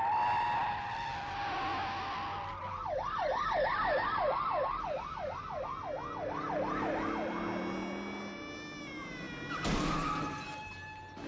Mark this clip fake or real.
real